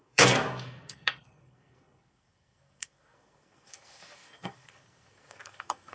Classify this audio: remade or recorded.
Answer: remade